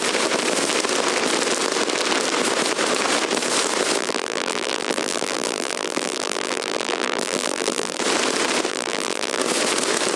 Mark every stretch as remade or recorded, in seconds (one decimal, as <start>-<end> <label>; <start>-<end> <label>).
0.0-4.0 recorded; 4.0-8.0 remade; 8.0-8.7 recorded; 8.7-9.4 remade; 9.4-10.2 recorded